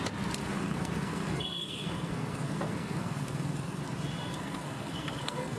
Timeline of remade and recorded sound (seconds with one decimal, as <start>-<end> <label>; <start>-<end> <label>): 0.0-0.4 recorded; 0.4-3.8 remade; 3.8-4.3 recorded; 4.3-5.6 remade